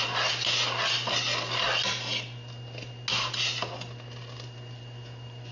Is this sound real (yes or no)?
yes